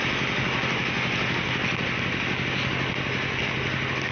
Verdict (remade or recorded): recorded